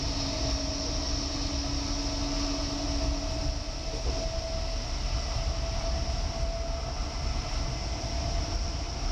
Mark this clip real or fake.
real